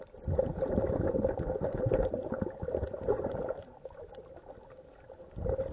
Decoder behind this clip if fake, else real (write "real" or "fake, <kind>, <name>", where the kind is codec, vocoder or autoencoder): real